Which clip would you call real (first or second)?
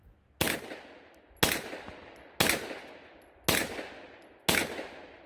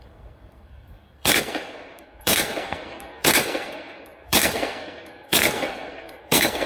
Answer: first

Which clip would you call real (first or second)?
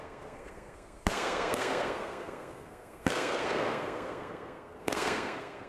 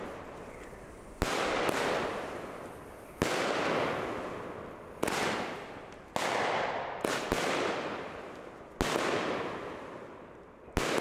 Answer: second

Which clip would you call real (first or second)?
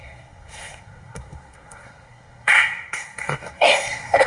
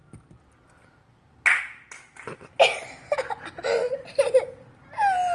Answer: second